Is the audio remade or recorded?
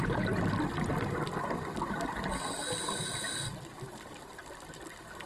recorded